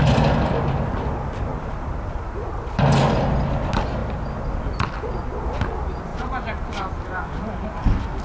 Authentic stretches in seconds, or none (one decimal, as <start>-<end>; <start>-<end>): 0.0-1.5; 2.8-6.1; 7.2-8.2